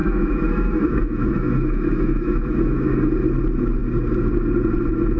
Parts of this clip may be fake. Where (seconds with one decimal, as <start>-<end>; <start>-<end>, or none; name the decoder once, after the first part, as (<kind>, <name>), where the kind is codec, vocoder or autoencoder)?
0.0-3.1 (autoencoder, DAC-VAE)